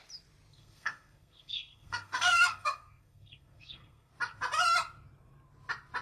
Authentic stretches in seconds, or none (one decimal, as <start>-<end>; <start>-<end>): 0.0-0.5; 4.1-6.0